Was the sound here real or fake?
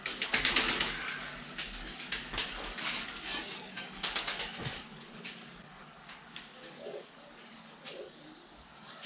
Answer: fake